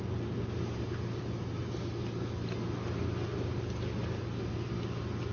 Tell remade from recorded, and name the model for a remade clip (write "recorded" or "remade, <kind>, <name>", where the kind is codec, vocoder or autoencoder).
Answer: recorded